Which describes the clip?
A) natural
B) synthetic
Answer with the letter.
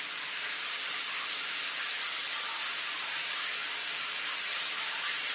B